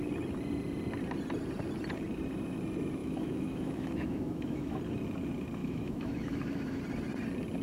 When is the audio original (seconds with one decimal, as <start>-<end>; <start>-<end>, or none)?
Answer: 0.0-3.0; 4.8-5.6; 6.8-7.6